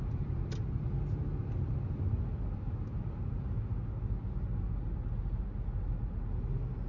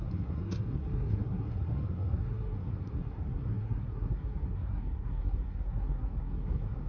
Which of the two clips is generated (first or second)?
second